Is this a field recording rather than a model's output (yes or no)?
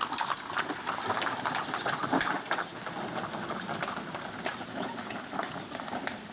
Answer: yes